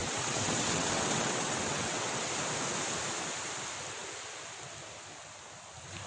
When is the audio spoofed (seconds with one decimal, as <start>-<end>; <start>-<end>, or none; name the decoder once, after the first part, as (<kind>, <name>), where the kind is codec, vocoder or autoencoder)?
0.0-2.3 (vocoder, WaveNeXt)